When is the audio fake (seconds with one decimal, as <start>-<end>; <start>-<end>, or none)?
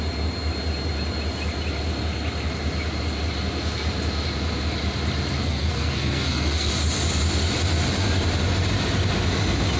5.4-6.7